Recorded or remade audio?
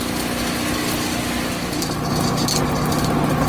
recorded